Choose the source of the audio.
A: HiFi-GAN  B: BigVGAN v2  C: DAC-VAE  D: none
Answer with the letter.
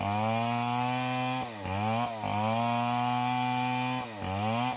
D